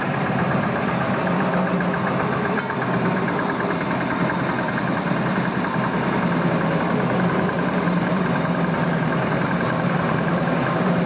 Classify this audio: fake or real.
fake